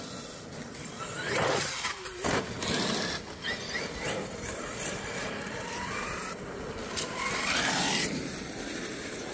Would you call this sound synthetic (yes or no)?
no